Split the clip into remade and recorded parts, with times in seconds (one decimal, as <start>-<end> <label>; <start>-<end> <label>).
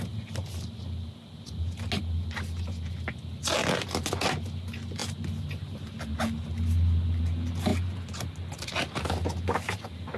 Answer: 0.0-10.2 recorded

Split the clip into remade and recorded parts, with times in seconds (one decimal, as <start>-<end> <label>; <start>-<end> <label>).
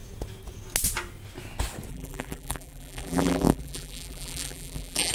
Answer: 0.0-1.9 recorded; 1.9-5.1 remade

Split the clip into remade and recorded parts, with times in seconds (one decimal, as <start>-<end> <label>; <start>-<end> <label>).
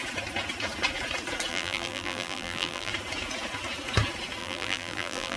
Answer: 0.0-1.5 recorded; 1.5-2.9 remade; 2.9-4.4 recorded; 4.4-5.4 remade